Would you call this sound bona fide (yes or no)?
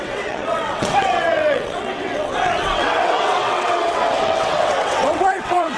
no